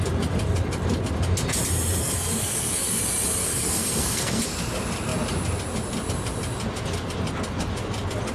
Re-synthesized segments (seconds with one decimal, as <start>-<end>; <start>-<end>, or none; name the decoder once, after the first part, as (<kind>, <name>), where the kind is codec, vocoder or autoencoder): 2.0-3.0 (codec, SNAC); 3.4-4.4